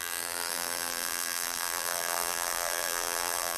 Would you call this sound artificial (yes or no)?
yes